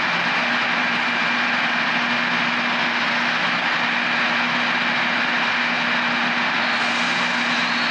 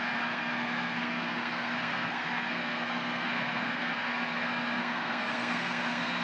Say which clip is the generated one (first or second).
second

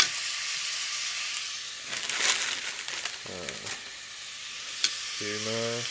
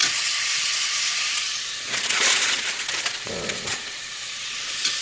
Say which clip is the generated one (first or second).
second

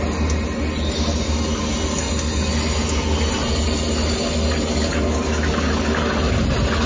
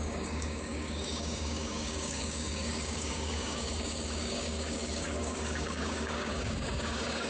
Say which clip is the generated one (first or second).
second